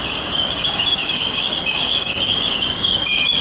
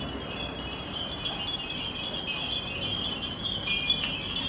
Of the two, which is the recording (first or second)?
second